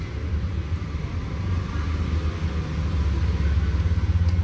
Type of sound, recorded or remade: recorded